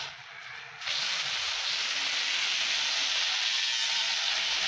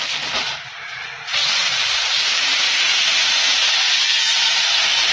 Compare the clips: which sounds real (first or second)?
first